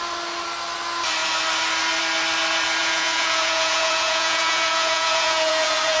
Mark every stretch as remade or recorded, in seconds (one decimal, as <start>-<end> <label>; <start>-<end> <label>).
0.0-2.8 recorded; 2.8-6.0 remade